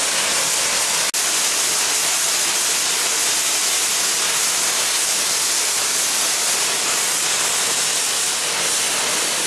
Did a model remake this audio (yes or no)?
no